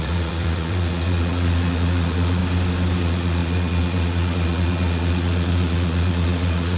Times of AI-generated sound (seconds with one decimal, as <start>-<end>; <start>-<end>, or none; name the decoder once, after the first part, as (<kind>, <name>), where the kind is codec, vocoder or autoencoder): 0.0-2.4 (vocoder, Vocos); 3.0-6.8